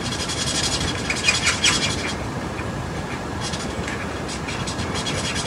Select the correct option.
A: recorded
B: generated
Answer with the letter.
B